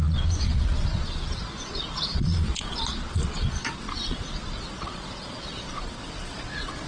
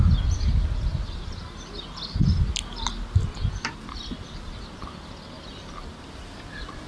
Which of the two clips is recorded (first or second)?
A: second